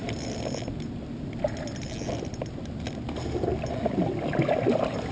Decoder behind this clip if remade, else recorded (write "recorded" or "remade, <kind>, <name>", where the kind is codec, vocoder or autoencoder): recorded